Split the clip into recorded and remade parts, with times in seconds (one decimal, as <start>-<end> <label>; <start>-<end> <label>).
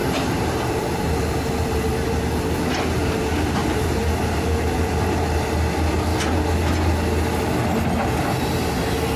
0.0-1.0 remade; 1.0-3.6 recorded; 3.6-5.0 remade; 5.0-9.2 recorded